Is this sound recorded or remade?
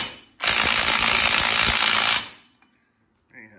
recorded